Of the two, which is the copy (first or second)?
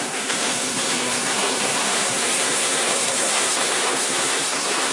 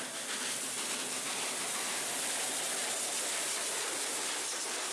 first